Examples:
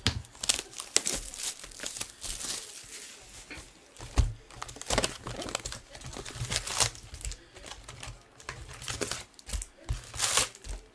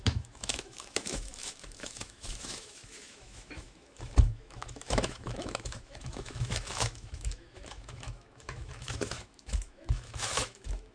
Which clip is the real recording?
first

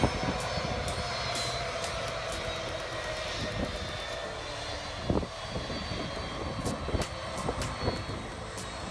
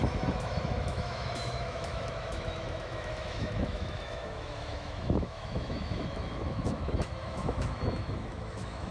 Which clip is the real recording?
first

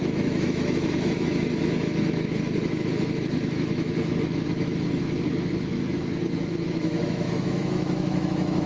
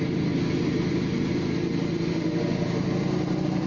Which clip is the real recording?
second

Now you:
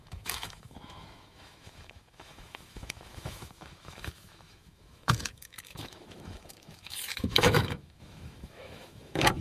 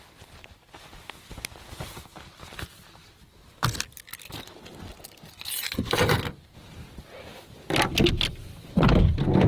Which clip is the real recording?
second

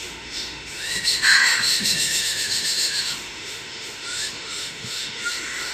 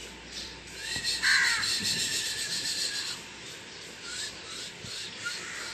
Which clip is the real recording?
second